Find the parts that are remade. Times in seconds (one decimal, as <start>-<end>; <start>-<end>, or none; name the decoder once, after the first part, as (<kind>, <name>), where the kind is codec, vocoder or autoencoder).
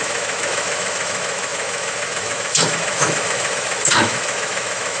0.0-5.0 (autoencoder, DAC-VAE)